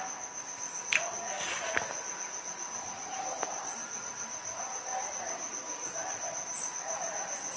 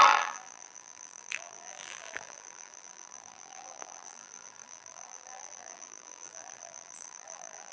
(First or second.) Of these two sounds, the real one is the first